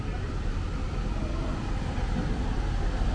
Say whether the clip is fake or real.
real